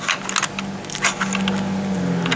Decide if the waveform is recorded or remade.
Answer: recorded